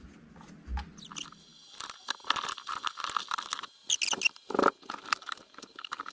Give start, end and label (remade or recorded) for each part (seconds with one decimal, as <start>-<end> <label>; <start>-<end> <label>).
0.0-6.1 recorded